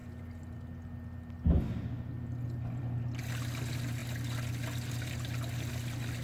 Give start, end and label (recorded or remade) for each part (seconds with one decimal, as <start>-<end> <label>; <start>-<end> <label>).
0.0-6.2 recorded